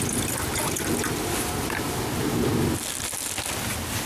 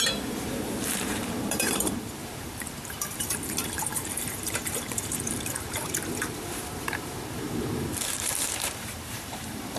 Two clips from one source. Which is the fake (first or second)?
second